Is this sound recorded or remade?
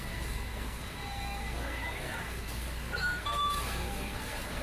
remade